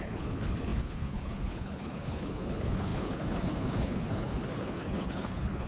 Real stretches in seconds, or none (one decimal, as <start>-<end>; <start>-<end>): none